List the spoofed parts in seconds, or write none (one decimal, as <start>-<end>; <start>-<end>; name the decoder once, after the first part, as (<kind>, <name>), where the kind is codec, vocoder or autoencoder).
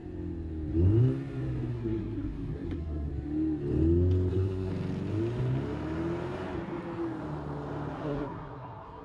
1.7-3.1 (codec, SNAC); 4.3-4.7; 7.9-9.0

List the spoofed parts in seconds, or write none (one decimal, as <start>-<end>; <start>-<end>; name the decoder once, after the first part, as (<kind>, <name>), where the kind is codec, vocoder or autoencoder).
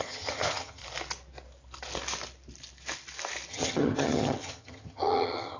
0.0-0.8 (vocoder, HiFi-GAN); 3.5-5.6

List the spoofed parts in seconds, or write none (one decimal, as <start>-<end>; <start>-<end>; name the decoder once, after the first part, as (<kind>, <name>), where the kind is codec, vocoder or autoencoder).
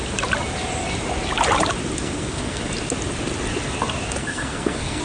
2.0-2.7 (codec, SNAC); 4.2-5.0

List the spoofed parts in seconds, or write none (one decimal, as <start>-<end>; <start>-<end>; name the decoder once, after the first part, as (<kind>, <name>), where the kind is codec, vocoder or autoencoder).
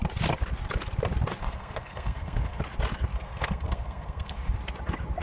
1.4-2.6 (codec, SNAC); 3.1-4.5